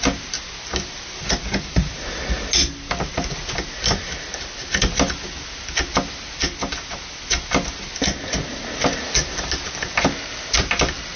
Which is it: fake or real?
real